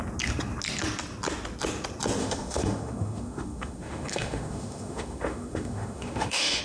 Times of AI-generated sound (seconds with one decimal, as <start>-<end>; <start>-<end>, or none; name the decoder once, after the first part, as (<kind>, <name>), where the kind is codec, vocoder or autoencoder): 2.2-6.6 (autoencoder, DAC-VAE)